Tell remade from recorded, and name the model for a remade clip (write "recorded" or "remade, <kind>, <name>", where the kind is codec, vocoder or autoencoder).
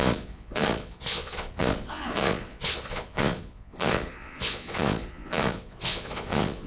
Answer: remade, vocoder, Vocos